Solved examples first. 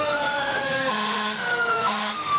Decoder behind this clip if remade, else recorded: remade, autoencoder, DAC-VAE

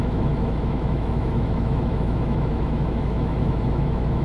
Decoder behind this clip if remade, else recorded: remade, autoencoder, DAC-VAE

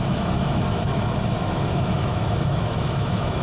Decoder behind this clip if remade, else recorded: remade, autoencoder, DAC-VAE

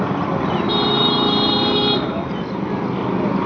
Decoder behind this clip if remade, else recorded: recorded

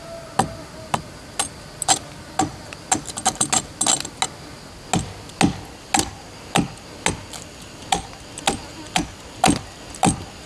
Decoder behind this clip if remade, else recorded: recorded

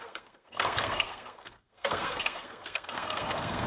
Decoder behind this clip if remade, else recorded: remade, codec, SNAC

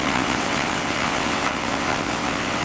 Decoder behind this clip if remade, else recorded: remade, vocoder, WaveNeXt